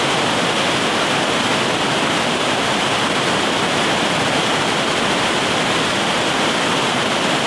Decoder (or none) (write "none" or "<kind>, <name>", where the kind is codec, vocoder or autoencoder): vocoder, BigVGAN v2